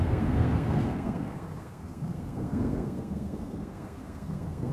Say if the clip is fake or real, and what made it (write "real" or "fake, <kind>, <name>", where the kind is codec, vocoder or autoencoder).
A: fake, codec, SNAC